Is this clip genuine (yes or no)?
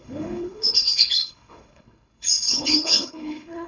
no